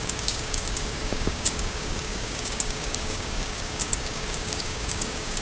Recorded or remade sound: remade